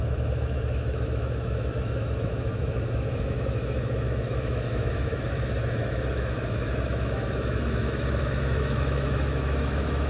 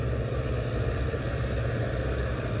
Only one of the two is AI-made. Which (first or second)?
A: first